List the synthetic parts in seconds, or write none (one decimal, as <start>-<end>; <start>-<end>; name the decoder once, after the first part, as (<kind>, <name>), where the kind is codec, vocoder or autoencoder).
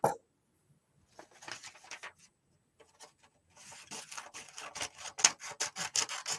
none